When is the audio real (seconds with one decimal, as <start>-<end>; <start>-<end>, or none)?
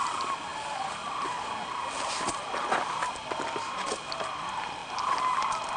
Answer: 0.0-5.8